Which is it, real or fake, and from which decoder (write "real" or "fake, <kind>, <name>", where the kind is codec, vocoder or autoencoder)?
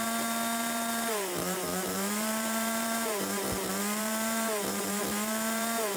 fake, vocoder, BigVGAN v2